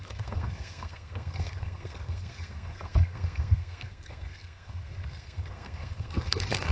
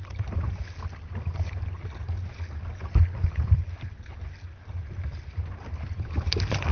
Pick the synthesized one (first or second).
first